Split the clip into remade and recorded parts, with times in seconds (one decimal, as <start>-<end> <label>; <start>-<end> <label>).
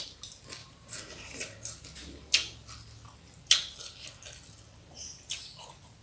0.0-0.6 recorded; 0.6-1.4 remade; 1.4-6.0 recorded